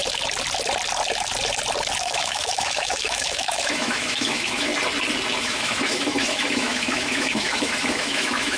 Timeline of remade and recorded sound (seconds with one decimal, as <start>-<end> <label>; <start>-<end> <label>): 0.0-2.0 recorded; 2.0-4.7 remade; 4.7-5.4 recorded; 5.4-8.6 remade